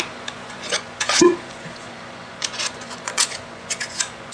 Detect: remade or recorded remade